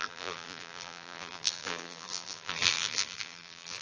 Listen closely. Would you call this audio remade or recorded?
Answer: remade